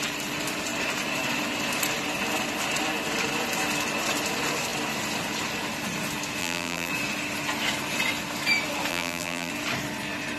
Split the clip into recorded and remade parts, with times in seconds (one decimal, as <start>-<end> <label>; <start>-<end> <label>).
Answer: 0.0-6.4 recorded; 6.4-6.9 remade; 6.9-8.9 recorded; 8.9-9.5 remade; 9.5-10.4 recorded